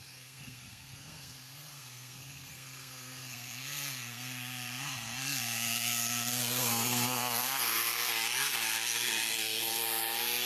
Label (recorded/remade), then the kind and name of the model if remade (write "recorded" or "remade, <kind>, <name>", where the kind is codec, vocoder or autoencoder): remade, codec, SNAC